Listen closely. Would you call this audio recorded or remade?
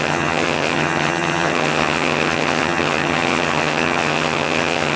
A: remade